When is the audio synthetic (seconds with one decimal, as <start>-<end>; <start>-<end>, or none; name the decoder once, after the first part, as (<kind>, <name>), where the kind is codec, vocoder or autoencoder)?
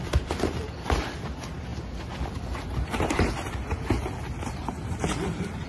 none